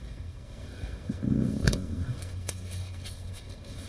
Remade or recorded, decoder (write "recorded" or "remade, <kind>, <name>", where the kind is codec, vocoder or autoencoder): remade, codec, SNAC